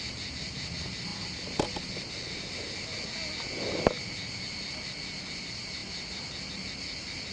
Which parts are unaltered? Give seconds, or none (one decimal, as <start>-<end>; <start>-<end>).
0.0-7.3